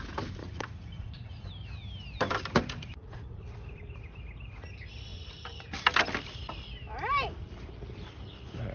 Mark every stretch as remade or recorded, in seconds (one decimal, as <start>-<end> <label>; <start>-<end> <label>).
0.0-0.4 recorded; 0.4-1.5 remade; 1.5-2.9 recorded; 2.9-3.4 remade; 3.4-8.7 recorded